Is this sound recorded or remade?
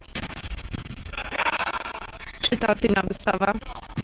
remade